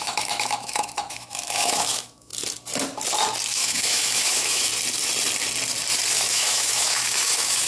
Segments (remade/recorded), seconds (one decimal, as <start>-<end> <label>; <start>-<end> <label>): 0.0-2.3 remade; 2.3-3.5 recorded; 3.5-4.7 remade; 4.7-6.1 recorded; 6.1-7.7 remade